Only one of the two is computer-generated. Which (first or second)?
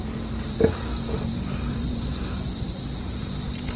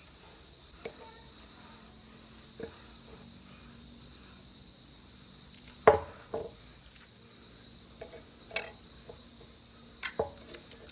first